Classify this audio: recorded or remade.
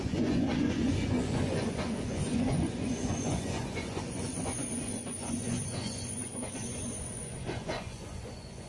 remade